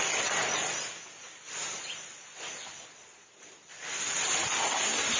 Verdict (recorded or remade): recorded